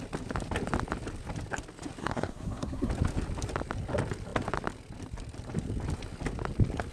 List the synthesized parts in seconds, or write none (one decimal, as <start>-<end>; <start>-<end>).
2.0-2.9

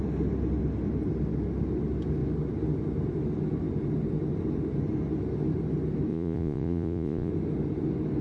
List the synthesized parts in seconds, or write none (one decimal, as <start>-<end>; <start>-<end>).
6.1-7.3

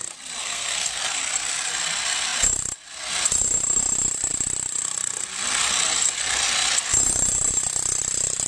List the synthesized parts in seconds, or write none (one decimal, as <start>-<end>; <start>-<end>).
0.4-1.0